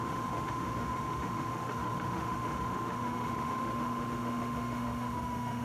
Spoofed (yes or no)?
yes